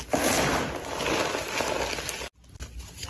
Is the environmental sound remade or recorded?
recorded